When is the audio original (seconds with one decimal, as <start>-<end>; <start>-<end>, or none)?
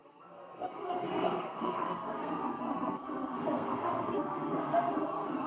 none